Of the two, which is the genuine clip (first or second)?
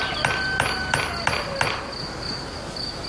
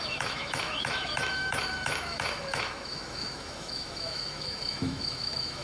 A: first